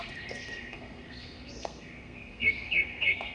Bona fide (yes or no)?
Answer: no